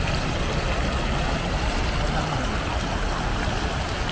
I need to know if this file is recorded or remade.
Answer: recorded